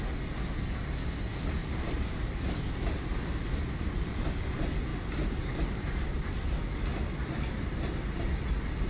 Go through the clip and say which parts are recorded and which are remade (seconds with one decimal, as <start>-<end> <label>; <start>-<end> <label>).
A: 0.0-1.6 recorded; 1.6-4.2 remade; 4.2-8.9 recorded